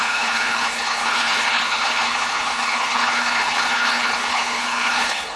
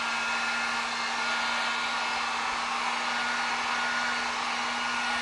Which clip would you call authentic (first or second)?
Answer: second